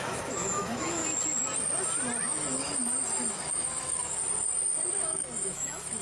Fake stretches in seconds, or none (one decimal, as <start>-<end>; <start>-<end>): 0.0-1.0; 2.2-2.8; 3.3-4.2; 5.0-6.0